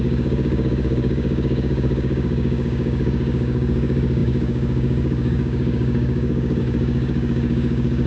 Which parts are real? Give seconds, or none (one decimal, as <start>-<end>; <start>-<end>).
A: none